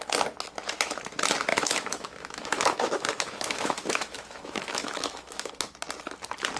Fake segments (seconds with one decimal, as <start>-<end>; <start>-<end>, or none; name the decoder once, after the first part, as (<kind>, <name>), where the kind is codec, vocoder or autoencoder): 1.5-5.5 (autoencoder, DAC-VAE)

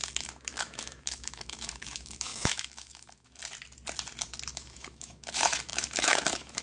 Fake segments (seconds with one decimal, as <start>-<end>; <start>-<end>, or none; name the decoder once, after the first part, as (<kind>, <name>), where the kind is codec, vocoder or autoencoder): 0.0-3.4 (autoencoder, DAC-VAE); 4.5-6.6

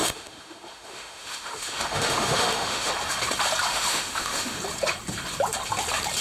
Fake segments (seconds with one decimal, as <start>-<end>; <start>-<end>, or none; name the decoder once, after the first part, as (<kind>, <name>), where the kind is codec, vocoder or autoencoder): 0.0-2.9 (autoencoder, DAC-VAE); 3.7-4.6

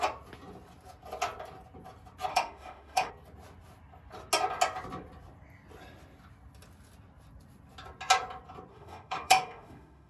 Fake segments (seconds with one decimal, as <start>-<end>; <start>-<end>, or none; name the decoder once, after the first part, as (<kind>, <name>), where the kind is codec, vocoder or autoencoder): 2.3-3.1 (autoencoder, DAC-VAE); 8.7-10.1

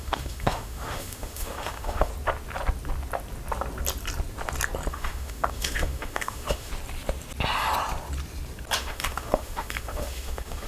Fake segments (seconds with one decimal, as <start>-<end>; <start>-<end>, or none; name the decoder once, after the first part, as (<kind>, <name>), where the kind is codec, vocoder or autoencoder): 0.0-2.1 (autoencoder, DAC-VAE); 4.9-6.7; 8.8-10.7

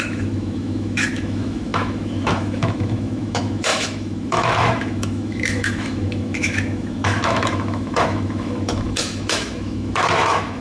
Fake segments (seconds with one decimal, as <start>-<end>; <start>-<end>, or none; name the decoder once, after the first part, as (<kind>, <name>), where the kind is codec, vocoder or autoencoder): 0.0-10.6 (autoencoder, DAC-VAE)